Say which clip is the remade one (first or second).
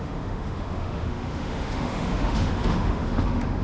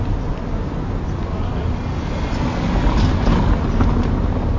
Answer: first